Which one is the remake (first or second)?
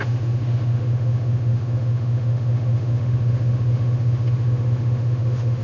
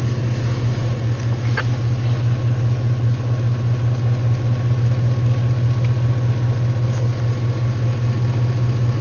first